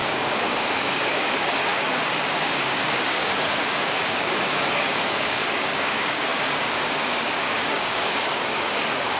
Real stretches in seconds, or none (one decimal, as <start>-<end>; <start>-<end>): none